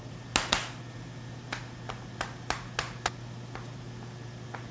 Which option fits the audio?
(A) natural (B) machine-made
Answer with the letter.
A